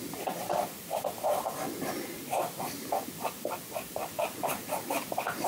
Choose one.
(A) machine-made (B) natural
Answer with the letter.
A